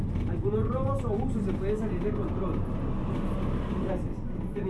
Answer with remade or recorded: recorded